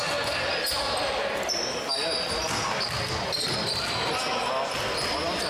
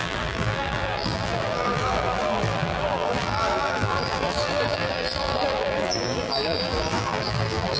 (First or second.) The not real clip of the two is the second